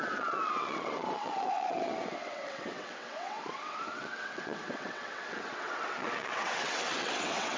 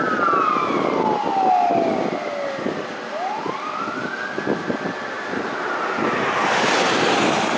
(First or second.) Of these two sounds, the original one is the second